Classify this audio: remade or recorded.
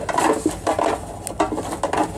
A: recorded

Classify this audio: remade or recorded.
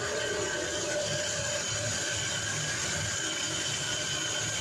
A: recorded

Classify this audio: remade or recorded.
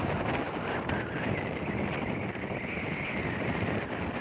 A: recorded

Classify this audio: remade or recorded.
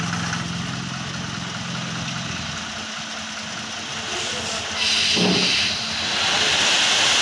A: recorded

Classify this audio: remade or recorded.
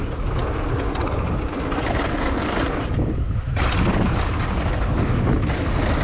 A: recorded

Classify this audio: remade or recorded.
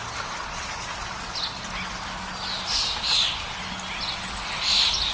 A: recorded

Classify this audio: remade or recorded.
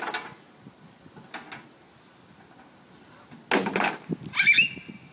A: recorded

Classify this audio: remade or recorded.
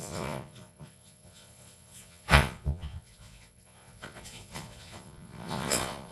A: remade